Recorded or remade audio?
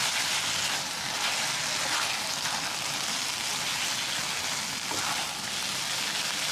recorded